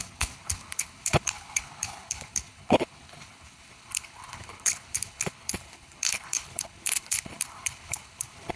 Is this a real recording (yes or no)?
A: no